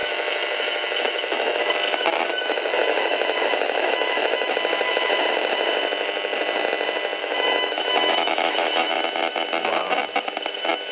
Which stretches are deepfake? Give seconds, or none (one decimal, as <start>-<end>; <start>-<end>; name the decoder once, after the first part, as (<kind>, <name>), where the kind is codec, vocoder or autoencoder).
0.0-1.6 (autoencoder, DAC-VAE); 2.3-4.5; 7.2-8.9